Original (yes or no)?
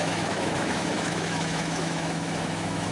no